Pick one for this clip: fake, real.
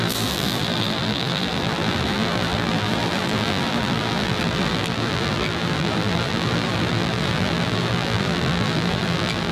fake